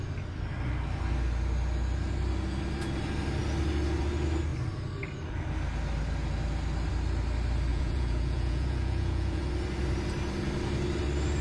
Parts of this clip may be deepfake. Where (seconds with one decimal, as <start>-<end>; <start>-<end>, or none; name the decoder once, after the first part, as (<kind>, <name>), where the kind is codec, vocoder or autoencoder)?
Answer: 7.7-9.4 (vocoder, Vocos)